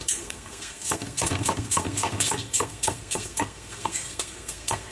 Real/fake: fake